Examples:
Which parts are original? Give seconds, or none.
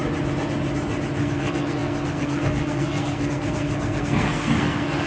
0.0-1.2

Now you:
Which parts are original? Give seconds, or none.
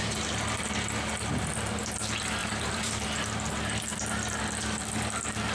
0.0-2.4; 2.9-5.5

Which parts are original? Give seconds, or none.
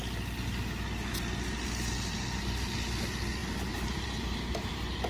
0.0-3.4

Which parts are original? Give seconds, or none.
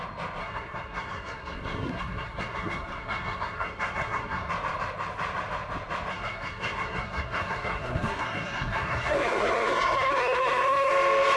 0.0-0.4; 4.5-6.1; 10.9-11.4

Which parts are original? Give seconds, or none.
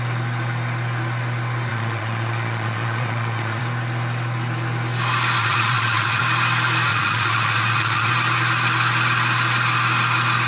0.0-1.7; 3.6-5.4; 6.2-6.9; 8.1-10.5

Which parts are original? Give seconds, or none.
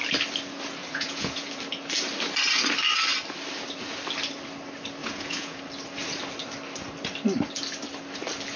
0.0-0.8; 1.5-5.0; 5.6-8.6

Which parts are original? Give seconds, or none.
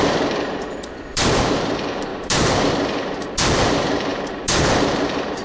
none